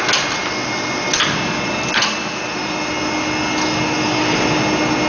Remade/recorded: recorded